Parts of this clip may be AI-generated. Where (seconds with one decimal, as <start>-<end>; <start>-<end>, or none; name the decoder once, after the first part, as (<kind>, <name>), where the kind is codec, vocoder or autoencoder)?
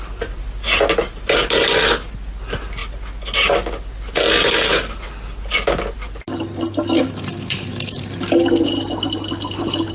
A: none